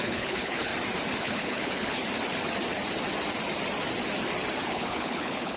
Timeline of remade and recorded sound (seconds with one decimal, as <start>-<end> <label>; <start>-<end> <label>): 0.0-0.7 remade; 0.7-1.2 recorded; 1.2-2.0 remade; 2.0-4.7 recorded; 4.7-5.6 remade